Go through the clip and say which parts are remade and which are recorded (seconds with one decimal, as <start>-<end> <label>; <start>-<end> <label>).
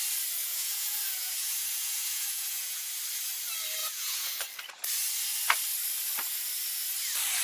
0.0-0.4 recorded; 0.4-2.9 remade; 2.9-3.8 recorded; 3.8-4.4 remade; 4.4-7.4 recorded